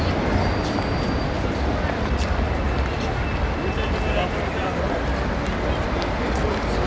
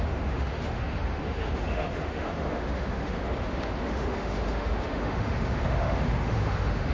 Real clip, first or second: first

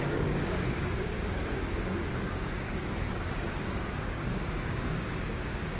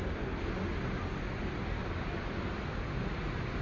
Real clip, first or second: second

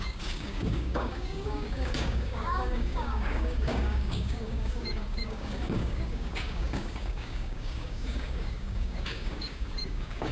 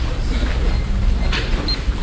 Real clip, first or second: second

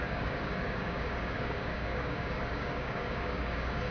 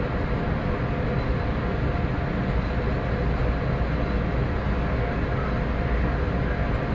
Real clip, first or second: second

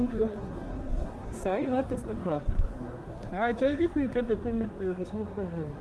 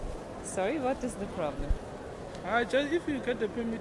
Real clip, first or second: second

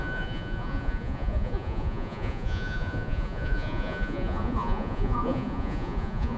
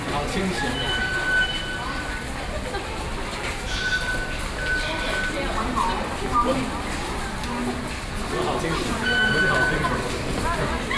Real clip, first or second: second